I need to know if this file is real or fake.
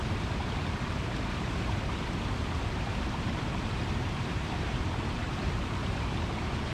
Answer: fake